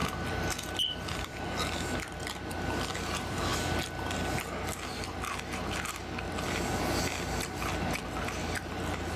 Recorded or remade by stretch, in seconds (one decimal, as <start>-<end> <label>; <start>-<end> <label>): 0.0-0.7 recorded; 0.7-3.5 remade; 3.5-8.3 recorded; 8.3-9.2 remade